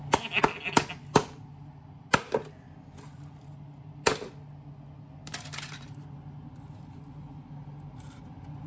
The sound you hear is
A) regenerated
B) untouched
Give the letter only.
B